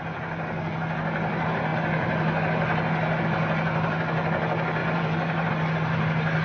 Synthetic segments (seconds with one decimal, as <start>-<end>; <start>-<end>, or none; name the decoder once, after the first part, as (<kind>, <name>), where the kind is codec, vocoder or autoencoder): 4.8-5.5 (vocoder, BigVGAN v2)